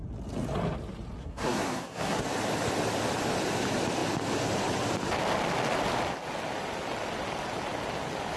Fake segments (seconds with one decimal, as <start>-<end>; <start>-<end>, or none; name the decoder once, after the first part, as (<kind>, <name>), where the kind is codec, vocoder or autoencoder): 1.2-2.2 (codec, SNAC)